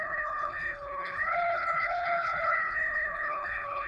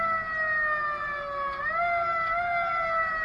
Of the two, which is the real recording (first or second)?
second